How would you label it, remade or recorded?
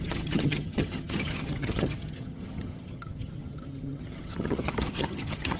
remade